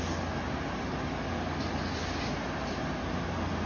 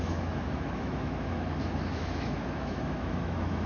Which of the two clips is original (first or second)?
first